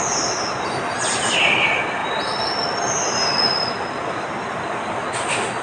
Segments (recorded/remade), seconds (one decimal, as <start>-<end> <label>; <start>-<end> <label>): 0.0-5.6 recorded